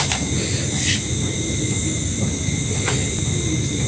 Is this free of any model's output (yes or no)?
yes